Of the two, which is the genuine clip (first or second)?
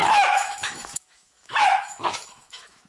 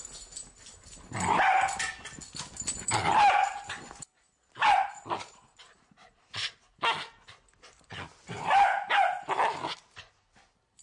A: second